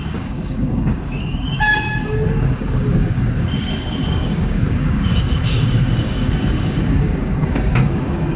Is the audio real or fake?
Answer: fake